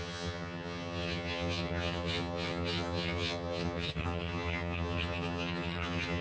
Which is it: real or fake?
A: fake